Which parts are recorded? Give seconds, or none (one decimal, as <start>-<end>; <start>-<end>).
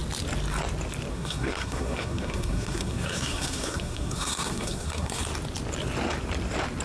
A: 0.0-1.1; 5.2-6.8